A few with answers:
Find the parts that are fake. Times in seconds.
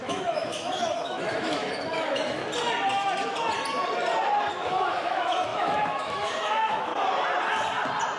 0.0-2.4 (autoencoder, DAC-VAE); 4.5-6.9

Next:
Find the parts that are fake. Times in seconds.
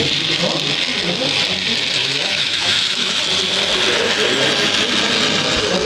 2.0-3.2 (autoencoder, DAC-VAE)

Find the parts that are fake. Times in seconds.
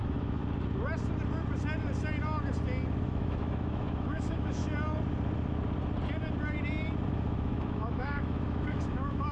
0.0-0.4 (autoencoder, DAC-VAE); 3.0-4.6; 7.1-9.3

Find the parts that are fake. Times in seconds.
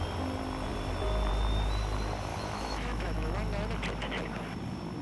2.3-3.3 (autoencoder, DAC-VAE)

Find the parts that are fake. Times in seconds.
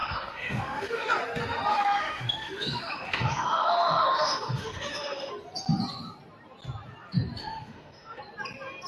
0.0-1.1 (autoencoder, DAC-VAE); 1.7-5.3; 7.4-8.2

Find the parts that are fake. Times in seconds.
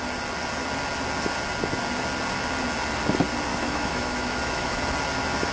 3.5-4.8 (autoencoder, DAC-VAE)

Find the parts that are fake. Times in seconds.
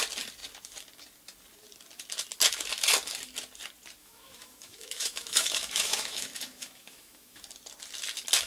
4.0-7.4 (autoencoder, DAC-VAE)